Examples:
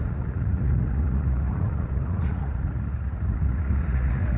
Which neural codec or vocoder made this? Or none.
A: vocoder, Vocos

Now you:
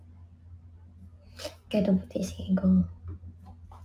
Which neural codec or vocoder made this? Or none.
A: none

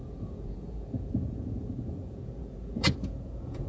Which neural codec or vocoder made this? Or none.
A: vocoder, Vocos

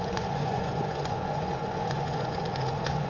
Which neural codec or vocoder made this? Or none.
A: vocoder, Vocos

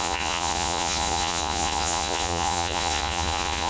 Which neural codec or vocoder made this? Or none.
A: vocoder, Vocos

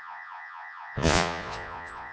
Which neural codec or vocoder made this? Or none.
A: vocoder, Vocos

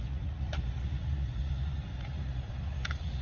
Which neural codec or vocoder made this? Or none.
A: vocoder, Vocos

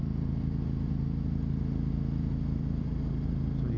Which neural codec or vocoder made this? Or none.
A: none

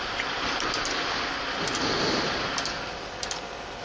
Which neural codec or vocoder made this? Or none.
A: none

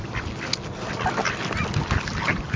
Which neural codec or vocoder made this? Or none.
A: none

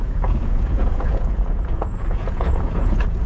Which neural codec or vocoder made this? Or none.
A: vocoder, Vocos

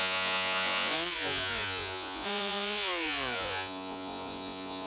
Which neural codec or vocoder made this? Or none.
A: vocoder, Vocos